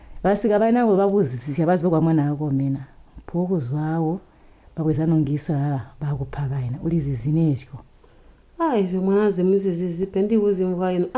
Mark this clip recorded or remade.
recorded